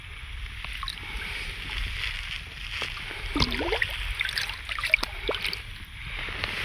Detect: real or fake real